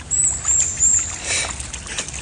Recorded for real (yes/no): yes